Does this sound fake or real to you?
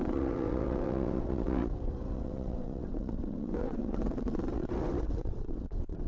fake